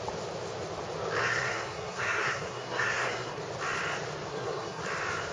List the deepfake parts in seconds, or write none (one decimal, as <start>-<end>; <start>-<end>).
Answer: 1.2-3.4; 4.3-4.8